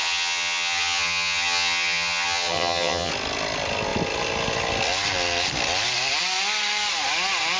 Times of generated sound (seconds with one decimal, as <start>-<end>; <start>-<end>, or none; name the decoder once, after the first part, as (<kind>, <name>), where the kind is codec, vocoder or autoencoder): 0.0-3.1 (vocoder, HiFi-GAN)

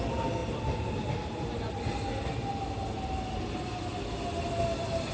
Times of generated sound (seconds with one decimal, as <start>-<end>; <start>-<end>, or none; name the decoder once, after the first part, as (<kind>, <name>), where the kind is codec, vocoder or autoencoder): none